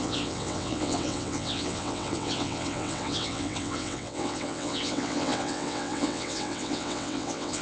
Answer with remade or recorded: remade